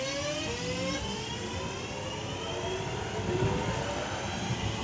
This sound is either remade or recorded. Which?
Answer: recorded